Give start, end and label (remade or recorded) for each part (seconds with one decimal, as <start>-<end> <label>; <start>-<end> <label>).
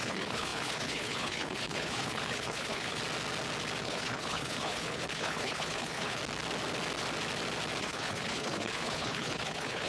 0.0-3.0 remade; 3.0-3.8 recorded; 3.8-6.2 remade; 6.2-7.8 recorded; 7.8-9.9 remade